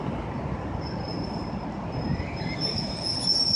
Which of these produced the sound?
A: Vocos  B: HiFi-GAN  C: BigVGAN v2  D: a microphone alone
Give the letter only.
D